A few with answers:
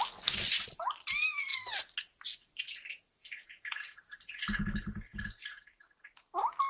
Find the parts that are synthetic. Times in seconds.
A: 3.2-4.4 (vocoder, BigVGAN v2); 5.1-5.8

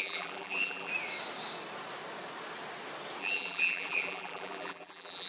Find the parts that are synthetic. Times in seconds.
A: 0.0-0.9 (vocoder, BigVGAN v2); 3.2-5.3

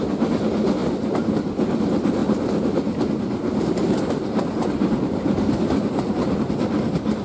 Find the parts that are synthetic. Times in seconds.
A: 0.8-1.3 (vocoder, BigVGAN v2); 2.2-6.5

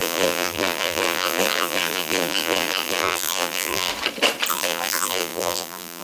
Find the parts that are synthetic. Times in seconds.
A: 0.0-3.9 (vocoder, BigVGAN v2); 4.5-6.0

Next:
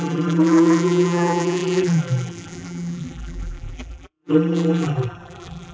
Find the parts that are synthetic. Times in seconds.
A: 0.0-5.7 (vocoder, BigVGAN v2)